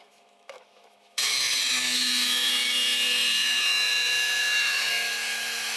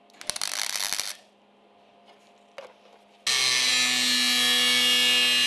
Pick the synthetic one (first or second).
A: first